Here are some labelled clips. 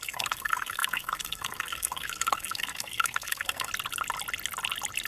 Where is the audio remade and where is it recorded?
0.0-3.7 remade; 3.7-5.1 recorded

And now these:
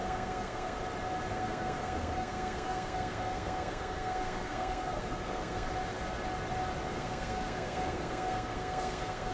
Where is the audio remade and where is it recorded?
0.0-0.8 remade; 0.8-1.3 recorded; 1.3-5.7 remade; 5.7-6.9 recorded; 6.9-9.3 remade